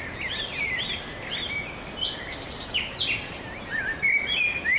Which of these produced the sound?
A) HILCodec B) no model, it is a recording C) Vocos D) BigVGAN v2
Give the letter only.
B